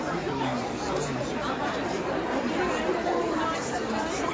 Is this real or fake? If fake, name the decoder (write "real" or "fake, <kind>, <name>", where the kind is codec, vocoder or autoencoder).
fake, vocoder, BigVGAN v2